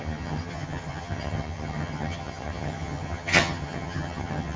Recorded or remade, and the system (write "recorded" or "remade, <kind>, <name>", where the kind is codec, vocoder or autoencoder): remade, vocoder, HiFi-GAN